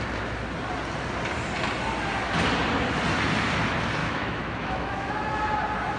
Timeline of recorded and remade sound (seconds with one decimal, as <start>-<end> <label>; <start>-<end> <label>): 0.0-4.0 recorded; 4.0-5.1 remade; 5.1-6.0 recorded